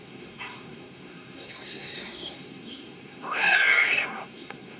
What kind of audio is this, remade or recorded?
remade